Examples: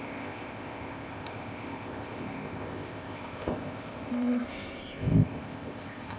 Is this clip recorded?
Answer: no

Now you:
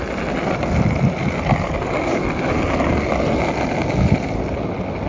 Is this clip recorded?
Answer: yes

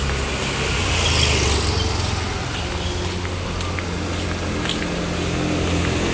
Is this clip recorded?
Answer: yes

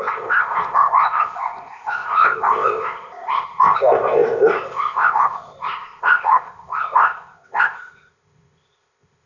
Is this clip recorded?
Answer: no